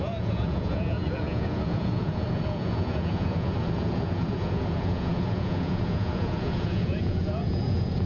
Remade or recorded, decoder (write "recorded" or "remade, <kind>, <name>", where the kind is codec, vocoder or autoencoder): remade, vocoder, Vocos